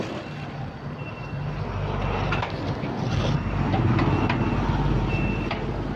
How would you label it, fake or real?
real